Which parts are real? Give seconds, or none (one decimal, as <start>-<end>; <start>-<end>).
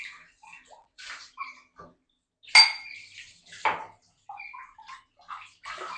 0.0-0.8; 1.5-6.0